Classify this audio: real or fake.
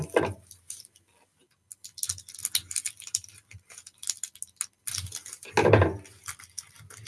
real